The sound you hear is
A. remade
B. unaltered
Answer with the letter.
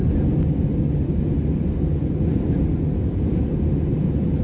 B